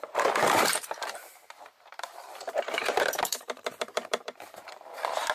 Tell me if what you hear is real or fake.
fake